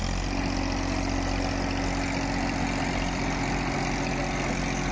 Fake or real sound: real